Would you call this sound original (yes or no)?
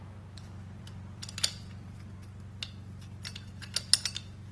yes